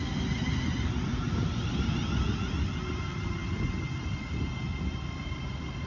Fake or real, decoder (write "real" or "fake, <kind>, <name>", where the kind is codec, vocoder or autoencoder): real